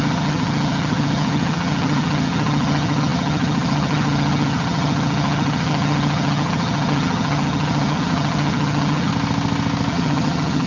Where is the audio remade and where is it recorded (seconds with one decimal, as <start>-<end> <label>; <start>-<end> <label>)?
0.0-9.1 remade; 9.1-9.9 recorded; 9.9-10.7 remade